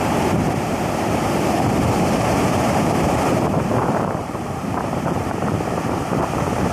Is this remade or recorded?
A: remade